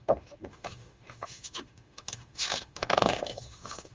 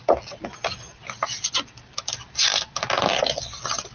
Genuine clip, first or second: second